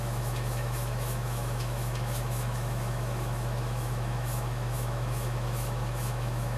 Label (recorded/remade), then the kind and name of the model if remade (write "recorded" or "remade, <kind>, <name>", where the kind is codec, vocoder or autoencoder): remade, autoencoder, DAC-VAE